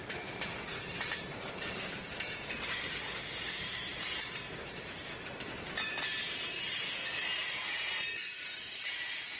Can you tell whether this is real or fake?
fake